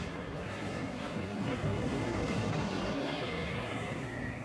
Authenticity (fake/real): fake